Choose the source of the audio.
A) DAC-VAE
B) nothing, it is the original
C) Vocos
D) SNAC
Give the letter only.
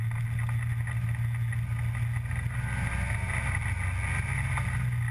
B